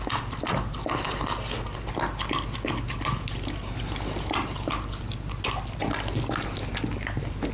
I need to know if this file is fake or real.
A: real